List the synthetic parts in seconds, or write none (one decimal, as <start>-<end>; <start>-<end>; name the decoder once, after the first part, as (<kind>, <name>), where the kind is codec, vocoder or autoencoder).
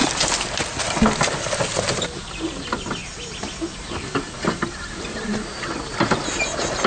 none